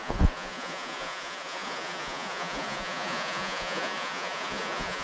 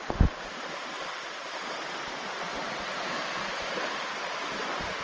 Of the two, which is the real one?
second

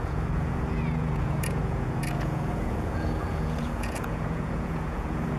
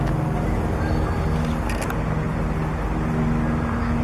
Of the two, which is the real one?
second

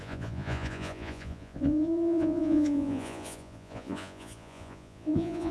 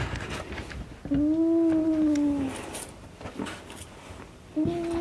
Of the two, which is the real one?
second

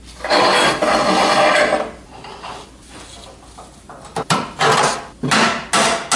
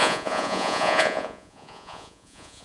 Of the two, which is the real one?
first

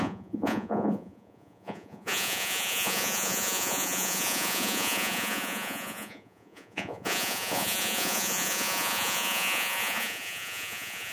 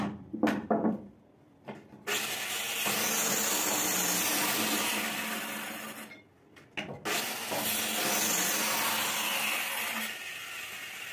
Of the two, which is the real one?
second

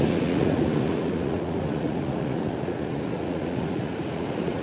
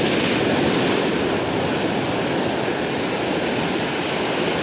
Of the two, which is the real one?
second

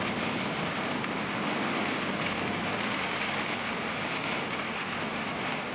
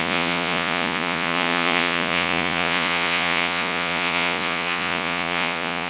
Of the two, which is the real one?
first